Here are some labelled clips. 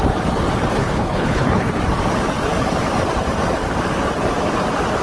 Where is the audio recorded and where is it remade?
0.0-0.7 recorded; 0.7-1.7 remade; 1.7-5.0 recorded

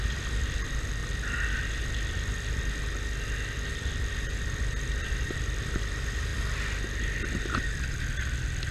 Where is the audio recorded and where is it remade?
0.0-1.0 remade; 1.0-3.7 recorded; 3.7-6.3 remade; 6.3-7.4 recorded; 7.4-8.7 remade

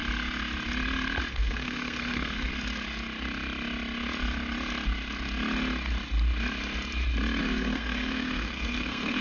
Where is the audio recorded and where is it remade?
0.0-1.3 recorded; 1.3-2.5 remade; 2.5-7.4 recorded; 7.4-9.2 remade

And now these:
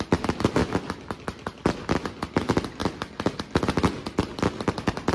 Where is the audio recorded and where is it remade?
0.0-5.1 recorded

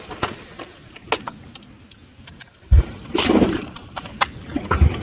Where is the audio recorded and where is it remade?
0.0-2.1 recorded; 2.1-4.2 remade; 4.2-5.0 recorded

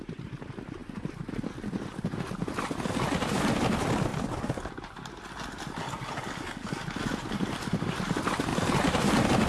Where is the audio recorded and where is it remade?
0.0-9.5 recorded